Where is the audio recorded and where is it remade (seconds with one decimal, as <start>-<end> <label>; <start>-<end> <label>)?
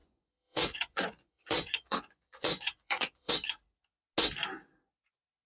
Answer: 0.0-3.3 remade; 3.3-5.5 recorded